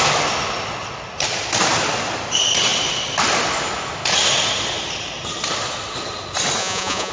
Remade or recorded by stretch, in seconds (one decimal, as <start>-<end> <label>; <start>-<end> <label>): 0.0-6.6 recorded; 6.6-7.1 remade